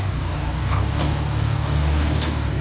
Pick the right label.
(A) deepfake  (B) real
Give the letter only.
A